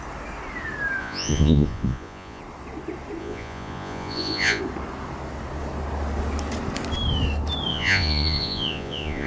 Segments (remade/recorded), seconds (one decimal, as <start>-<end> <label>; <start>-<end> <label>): 0.0-1.0 recorded; 1.0-2.4 remade; 2.4-3.2 recorded; 3.2-4.6 remade; 4.6-7.7 recorded; 7.7-9.3 remade